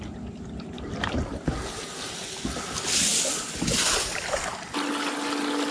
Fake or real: real